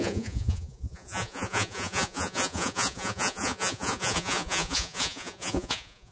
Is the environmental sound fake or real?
fake